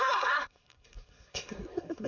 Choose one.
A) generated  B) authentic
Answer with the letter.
A